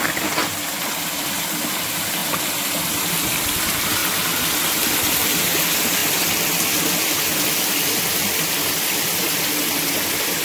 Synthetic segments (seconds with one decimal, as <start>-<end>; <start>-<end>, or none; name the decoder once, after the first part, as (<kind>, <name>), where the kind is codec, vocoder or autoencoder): 0.0-2.2 (vocoder, BigVGAN v2); 3.1-4.0; 4.7-6.0; 8.7-10.4